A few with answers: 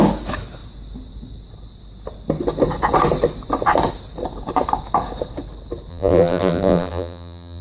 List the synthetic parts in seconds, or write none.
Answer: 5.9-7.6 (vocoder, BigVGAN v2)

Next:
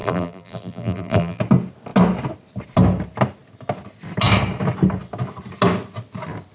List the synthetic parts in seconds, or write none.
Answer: 0.0-1.4 (vocoder, BigVGAN v2)

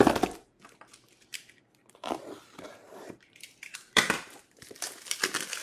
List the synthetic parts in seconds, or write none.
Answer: 1.3-4.7 (vocoder, BigVGAN v2)

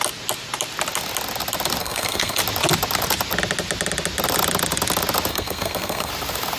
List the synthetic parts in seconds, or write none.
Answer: 1.8-2.4 (codec, SNAC); 5.3-6.1